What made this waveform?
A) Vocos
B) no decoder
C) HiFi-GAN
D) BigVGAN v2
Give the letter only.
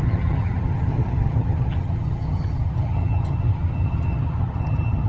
C